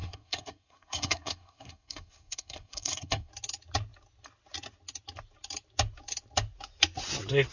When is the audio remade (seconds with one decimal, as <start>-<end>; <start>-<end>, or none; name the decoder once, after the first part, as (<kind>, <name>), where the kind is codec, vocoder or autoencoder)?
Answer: 0.0-3.3 (codec, SNAC)

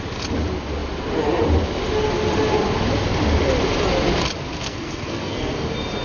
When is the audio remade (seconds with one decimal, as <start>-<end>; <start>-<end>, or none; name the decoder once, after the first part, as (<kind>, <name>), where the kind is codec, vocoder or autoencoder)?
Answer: 4.6-5.5 (codec, SNAC)

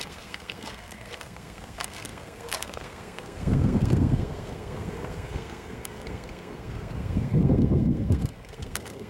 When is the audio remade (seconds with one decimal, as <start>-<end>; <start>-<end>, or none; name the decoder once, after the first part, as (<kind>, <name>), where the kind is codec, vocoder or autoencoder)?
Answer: 0.0-9.1 (codec, SNAC)

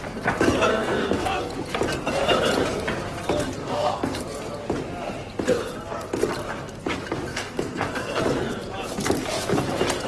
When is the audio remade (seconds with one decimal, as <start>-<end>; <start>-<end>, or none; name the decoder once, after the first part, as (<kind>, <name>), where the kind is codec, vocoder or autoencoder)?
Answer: 0.7-1.4 (codec, SNAC); 3.6-4.2; 7.3-8.2